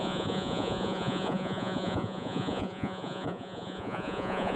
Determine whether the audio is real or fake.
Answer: fake